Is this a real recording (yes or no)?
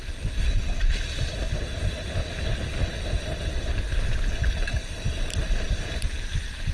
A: yes